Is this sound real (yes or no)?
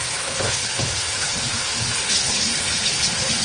no